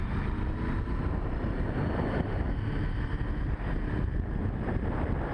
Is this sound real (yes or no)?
yes